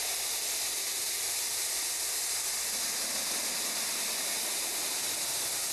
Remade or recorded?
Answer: recorded